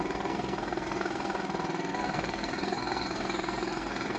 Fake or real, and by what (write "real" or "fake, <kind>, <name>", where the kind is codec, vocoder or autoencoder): fake, codec, SNAC